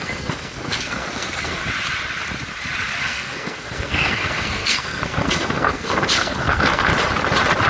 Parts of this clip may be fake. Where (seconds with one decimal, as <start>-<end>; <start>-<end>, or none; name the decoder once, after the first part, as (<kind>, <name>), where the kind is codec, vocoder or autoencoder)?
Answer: 0.0-1.6 (codec, SNAC); 3.0-6.9